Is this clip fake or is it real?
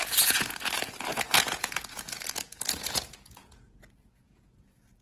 fake